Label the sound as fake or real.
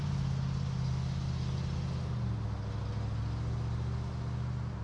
real